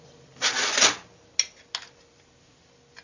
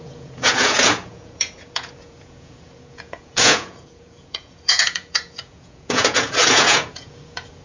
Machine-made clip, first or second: second